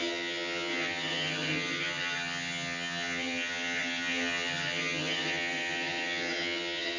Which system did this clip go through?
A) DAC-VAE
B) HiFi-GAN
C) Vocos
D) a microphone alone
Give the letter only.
B